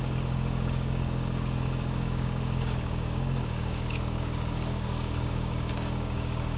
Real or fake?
fake